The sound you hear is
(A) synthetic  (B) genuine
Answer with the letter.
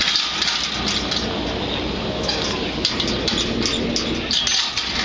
B